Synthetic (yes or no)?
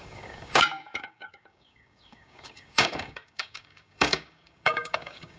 yes